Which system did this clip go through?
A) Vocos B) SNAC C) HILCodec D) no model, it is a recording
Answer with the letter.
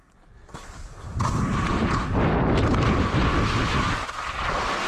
D